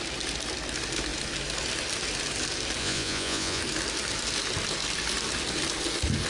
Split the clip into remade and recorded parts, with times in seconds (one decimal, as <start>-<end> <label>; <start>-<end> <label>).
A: 0.0-2.8 recorded; 2.8-3.6 remade; 3.6-6.3 recorded